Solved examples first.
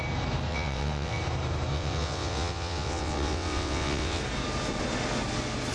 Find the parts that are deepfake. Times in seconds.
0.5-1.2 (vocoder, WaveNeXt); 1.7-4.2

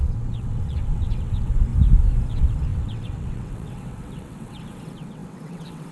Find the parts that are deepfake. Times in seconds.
0.0-1.7 (vocoder, WaveNeXt); 2.3-5.9

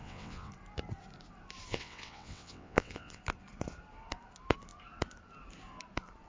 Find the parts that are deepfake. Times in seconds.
0.0-0.5 (vocoder, WaveNeXt); 1.7-3.2

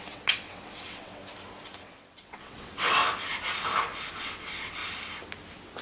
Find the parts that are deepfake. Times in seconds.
0.0-1.2 (vocoder, WaveNeXt); 1.8-3.0; 4.2-4.8

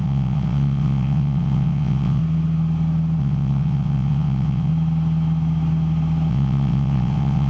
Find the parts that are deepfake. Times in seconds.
0.0-2.2 (vocoder, WaveNeXt); 3.2-4.7; 6.3-7.5

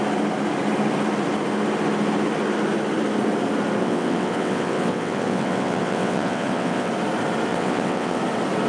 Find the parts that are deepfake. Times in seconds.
3.8-6.9 (vocoder, WaveNeXt); 7.5-8.2